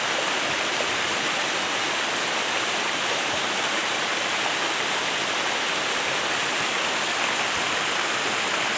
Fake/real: real